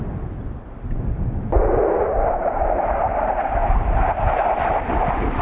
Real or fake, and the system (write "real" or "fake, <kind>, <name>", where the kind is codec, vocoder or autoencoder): real